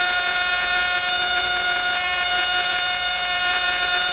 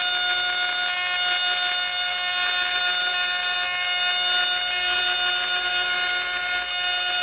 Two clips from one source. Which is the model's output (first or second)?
first